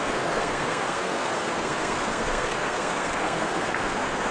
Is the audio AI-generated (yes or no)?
yes